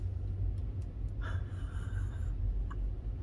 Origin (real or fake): real